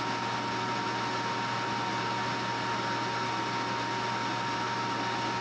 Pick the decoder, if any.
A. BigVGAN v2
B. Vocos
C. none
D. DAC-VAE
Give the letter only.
C